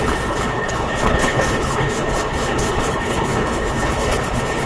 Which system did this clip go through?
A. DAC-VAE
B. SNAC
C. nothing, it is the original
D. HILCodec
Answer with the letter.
D